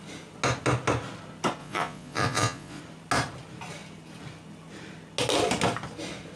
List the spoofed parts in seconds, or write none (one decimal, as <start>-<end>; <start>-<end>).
1.6-2.8